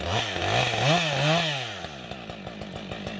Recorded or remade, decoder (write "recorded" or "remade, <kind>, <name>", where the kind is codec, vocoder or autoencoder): recorded